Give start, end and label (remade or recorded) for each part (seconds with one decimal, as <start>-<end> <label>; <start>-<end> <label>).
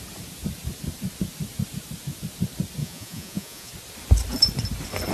0.0-2.8 recorded; 2.8-3.7 remade; 3.7-5.1 recorded